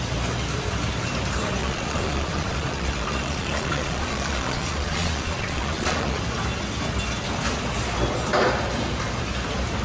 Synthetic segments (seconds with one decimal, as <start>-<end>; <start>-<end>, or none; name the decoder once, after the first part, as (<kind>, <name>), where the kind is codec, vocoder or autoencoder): 1.6-6.2 (vocoder, Vocos)